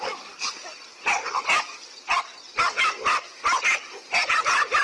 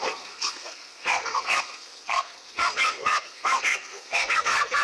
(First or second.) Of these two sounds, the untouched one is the first